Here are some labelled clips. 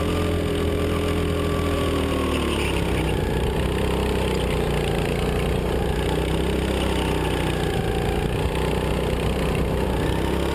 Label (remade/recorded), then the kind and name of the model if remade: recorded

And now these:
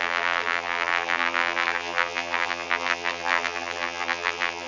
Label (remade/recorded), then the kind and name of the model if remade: remade, vocoder, BigVGAN v2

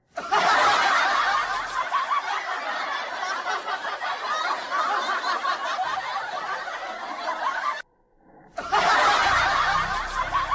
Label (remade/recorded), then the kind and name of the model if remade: recorded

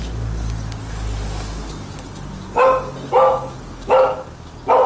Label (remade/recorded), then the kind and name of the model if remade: recorded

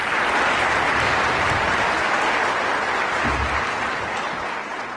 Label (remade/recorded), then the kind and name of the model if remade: recorded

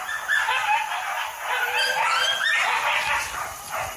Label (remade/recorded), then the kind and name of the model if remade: recorded